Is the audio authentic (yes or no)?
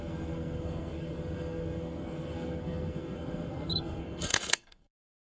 no